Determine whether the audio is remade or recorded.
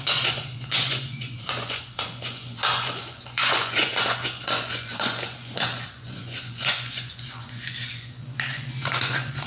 remade